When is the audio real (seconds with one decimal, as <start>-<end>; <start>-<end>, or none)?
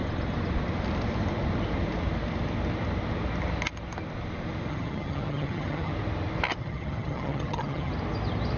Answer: 0.0-4.7; 5.9-6.6; 7.9-8.6